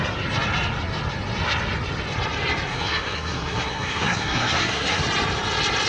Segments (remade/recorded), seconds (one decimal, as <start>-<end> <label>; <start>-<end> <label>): 0.0-2.7 recorded; 2.7-5.0 remade; 5.0-5.9 recorded